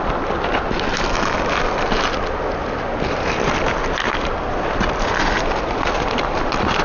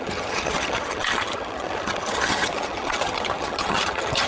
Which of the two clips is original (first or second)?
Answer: first